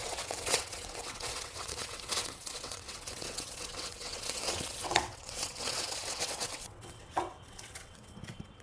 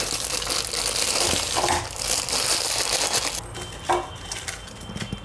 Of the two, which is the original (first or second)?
second